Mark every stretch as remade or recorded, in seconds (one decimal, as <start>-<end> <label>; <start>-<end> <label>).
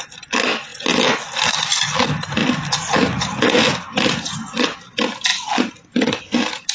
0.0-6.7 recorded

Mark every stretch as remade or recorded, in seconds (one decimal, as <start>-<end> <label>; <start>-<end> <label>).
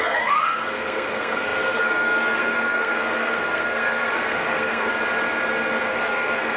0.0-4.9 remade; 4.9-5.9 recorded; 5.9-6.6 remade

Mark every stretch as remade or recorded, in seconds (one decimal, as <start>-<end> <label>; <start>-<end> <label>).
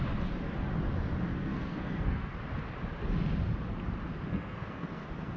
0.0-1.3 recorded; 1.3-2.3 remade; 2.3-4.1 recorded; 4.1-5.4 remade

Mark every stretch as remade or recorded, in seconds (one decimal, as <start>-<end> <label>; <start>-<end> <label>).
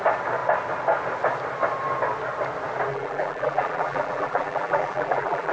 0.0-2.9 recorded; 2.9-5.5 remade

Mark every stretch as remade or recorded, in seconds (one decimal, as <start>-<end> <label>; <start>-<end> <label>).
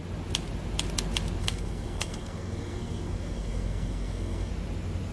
0.0-1.4 recorded; 1.4-4.5 remade; 4.5-5.1 recorded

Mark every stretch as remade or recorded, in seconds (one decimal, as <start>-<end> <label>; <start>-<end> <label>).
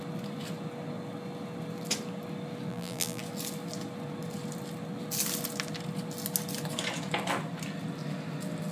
0.0-2.7 recorded; 2.7-3.2 remade; 3.2-8.7 recorded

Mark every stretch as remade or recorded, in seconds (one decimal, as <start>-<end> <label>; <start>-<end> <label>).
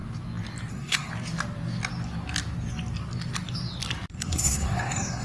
0.0-0.7 recorded; 0.7-1.1 remade; 1.1-4.2 recorded; 4.2-5.2 remade